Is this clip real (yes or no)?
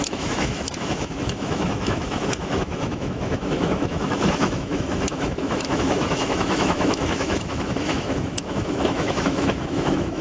no